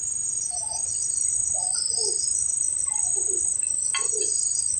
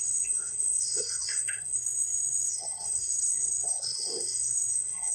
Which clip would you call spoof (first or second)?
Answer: second